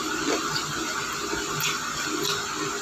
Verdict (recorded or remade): recorded